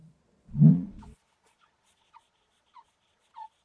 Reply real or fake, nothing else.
fake